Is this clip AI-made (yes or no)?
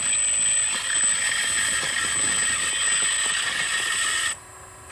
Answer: no